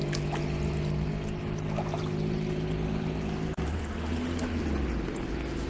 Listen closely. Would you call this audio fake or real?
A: real